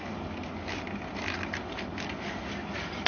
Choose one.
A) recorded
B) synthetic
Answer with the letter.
A